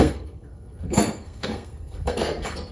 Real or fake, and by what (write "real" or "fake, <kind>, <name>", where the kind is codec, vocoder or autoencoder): fake, codec, SNAC